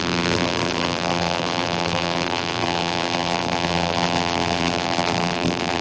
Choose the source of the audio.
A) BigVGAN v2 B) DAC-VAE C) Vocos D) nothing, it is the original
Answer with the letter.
A